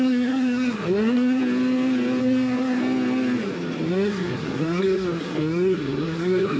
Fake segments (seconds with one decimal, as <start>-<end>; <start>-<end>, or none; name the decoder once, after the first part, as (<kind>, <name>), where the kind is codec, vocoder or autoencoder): 0.0-1.4 (codec, SNAC); 2.2-2.8; 3.9-6.6